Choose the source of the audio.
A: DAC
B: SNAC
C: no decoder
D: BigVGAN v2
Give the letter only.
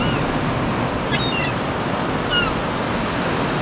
C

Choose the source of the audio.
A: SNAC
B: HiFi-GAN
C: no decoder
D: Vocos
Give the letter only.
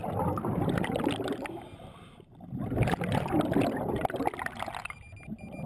C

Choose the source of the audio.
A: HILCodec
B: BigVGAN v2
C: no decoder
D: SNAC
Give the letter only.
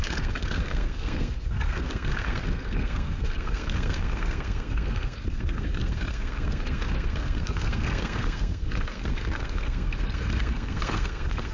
D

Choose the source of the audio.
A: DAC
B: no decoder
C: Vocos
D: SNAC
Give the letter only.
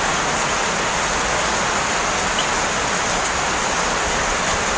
B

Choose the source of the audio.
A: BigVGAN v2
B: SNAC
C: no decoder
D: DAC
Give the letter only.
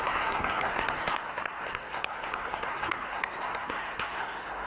B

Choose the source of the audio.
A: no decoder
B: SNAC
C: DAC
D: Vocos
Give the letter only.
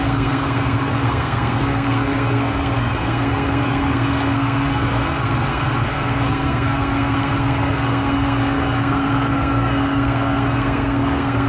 B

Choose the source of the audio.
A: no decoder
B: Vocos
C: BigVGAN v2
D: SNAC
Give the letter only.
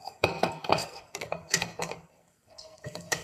D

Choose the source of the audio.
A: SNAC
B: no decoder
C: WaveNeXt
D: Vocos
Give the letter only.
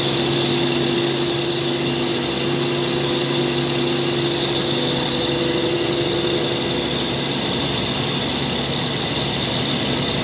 B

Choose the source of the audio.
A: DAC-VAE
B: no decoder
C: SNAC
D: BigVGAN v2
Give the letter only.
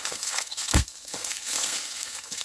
C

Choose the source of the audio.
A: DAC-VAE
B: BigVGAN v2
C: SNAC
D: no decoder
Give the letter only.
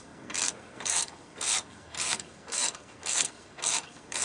C